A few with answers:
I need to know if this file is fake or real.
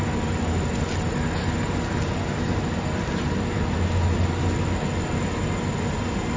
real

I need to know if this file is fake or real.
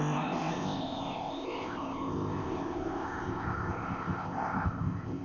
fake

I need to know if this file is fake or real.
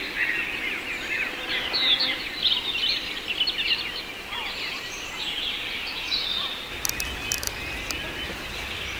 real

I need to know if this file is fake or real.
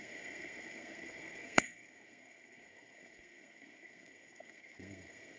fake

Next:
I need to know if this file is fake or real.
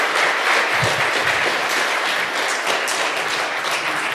real